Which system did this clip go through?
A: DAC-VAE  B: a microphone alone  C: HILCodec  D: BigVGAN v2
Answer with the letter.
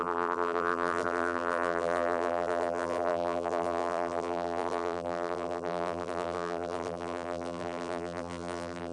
D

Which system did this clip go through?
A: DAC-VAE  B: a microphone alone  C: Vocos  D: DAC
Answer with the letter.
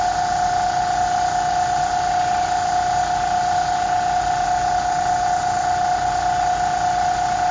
B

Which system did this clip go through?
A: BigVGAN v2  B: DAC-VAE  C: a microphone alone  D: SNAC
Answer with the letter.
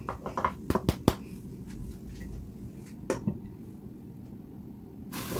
C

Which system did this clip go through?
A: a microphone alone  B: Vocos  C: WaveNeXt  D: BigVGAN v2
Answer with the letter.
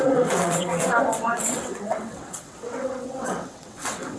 C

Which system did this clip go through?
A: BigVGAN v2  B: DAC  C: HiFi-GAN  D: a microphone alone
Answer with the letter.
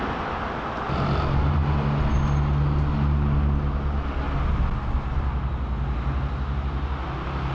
D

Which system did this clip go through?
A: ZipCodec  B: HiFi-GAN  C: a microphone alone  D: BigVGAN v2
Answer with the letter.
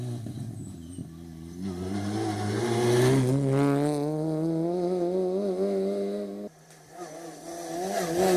C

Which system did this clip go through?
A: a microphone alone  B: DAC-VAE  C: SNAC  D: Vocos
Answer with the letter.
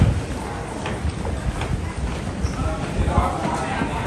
A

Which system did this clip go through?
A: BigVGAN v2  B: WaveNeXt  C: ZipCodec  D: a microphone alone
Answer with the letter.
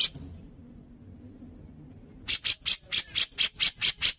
D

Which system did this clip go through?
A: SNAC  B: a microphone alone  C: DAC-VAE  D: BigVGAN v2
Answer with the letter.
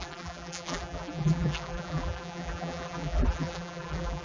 D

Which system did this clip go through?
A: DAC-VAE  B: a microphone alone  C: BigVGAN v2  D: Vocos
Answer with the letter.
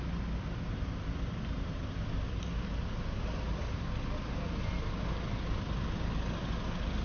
B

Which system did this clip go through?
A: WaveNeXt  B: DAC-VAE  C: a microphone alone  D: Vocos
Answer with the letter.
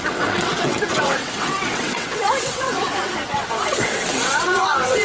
A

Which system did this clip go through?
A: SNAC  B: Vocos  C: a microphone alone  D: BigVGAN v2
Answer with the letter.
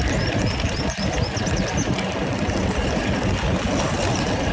C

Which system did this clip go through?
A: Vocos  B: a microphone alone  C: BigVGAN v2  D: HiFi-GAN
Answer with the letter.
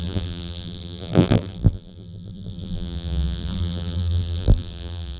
C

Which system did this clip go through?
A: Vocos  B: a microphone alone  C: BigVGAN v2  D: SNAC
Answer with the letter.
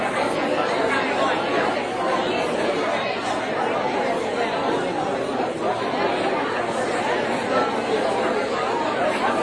B